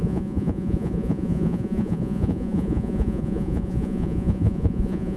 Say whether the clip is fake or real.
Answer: fake